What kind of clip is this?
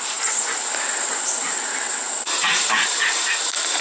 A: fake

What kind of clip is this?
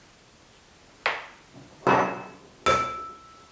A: real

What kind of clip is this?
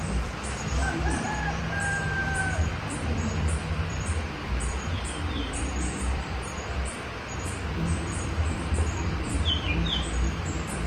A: fake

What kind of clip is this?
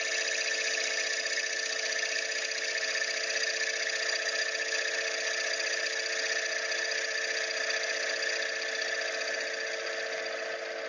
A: real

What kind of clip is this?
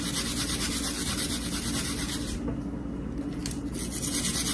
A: real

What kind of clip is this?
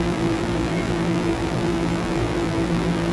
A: fake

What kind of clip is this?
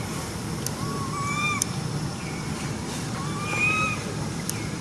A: fake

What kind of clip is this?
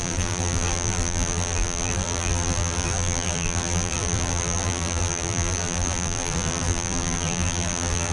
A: fake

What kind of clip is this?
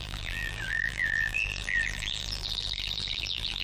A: fake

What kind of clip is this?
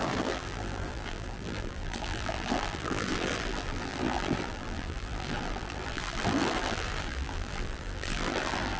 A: fake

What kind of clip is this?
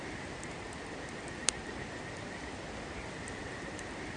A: fake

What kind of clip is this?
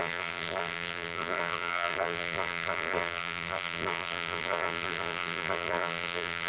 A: fake